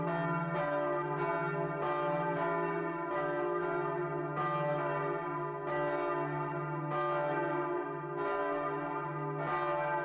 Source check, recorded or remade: recorded